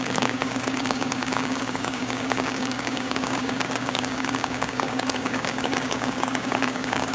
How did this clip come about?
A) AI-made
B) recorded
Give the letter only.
A